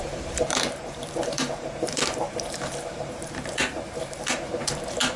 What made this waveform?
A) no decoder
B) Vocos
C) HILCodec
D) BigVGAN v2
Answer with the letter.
D